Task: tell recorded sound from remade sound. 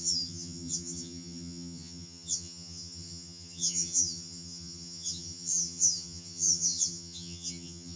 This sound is remade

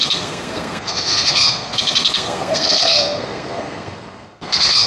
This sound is remade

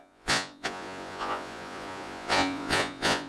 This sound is remade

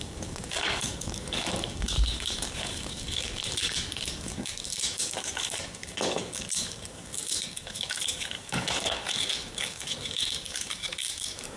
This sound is remade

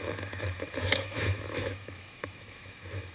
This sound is remade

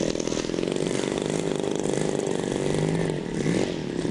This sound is recorded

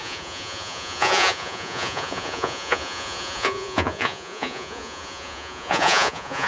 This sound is remade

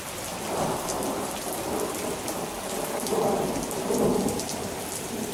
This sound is recorded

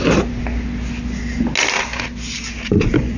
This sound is recorded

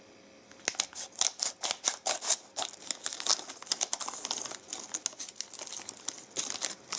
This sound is recorded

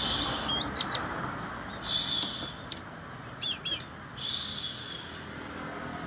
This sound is recorded